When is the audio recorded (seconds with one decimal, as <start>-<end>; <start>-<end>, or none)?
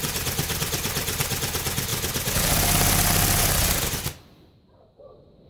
0.0-5.5